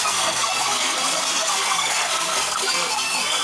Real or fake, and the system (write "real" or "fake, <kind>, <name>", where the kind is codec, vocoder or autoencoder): fake, codec, SNAC